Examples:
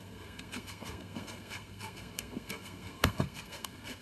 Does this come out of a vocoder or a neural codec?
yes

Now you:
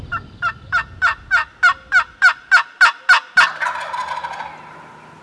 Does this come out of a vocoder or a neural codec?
no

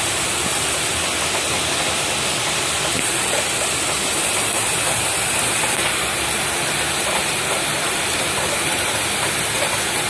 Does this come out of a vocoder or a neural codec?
no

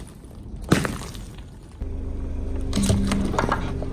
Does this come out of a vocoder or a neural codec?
no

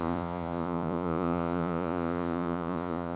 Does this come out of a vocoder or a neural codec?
yes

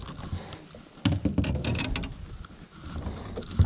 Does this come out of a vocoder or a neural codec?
no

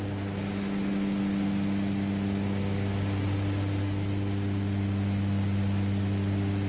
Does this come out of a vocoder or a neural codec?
no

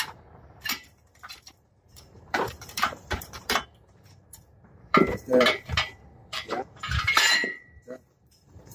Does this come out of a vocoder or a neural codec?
yes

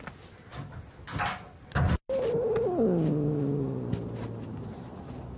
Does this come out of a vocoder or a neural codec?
no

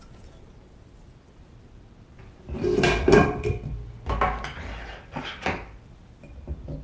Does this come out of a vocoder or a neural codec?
no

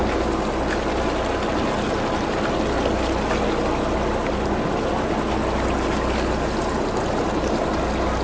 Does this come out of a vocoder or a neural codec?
no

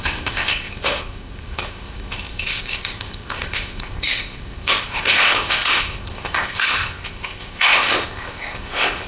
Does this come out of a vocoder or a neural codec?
yes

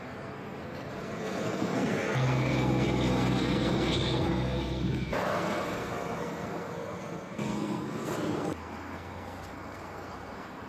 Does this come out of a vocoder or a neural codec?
yes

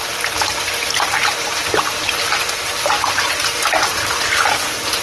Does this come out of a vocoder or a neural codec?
no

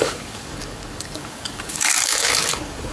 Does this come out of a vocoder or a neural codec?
yes